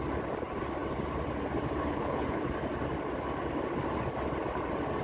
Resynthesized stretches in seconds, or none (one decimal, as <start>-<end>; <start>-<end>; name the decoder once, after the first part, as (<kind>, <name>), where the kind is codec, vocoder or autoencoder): 1.8-2.5 (codec, HILCodec)